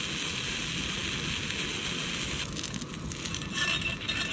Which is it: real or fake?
real